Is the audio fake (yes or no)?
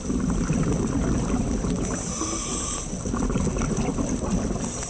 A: no